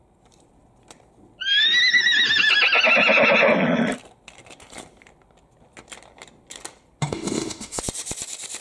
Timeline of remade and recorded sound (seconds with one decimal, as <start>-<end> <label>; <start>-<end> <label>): 0.0-7.0 recorded; 7.0-7.8 remade; 7.8-8.6 recorded